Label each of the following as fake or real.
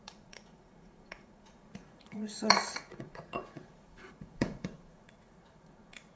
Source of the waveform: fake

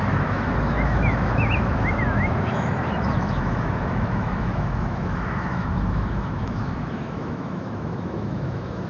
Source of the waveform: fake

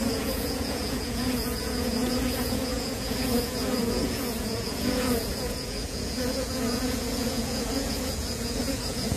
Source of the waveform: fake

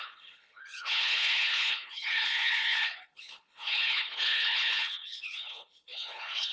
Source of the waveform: fake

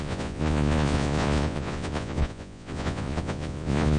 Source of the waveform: fake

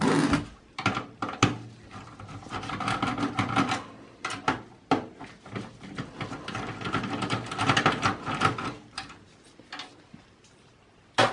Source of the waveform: real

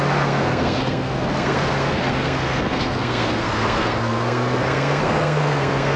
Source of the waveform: fake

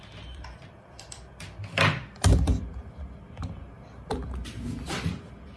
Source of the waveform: fake